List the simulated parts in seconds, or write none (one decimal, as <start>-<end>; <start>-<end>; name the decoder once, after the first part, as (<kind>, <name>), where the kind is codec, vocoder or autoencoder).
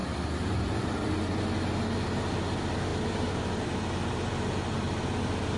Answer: 0.0-1.1 (vocoder, BigVGAN v2); 2.9-3.8